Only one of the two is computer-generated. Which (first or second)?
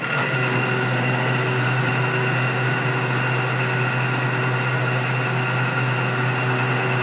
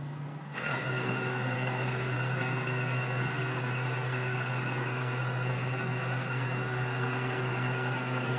second